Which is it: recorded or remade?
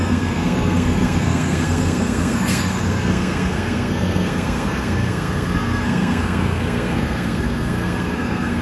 remade